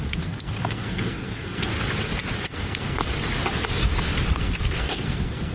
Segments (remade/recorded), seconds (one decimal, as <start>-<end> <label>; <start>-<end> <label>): 0.0-1.7 remade; 1.7-2.4 recorded; 2.4-3.0 remade; 3.0-4.3 recorded; 4.3-5.5 remade